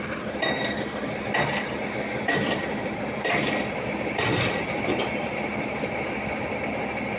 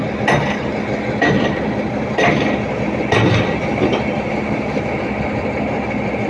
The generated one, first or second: first